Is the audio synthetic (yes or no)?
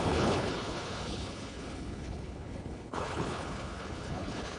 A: yes